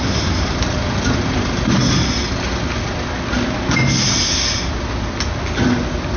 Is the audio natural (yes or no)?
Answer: yes